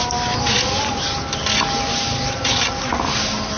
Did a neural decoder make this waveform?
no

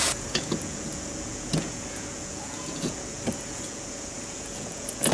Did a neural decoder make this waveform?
yes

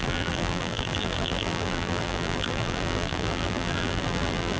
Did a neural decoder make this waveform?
yes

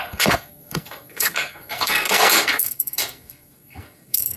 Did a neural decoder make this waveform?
yes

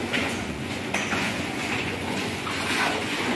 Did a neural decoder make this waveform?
yes